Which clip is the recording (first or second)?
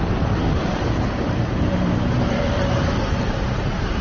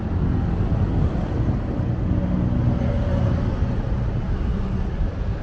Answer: second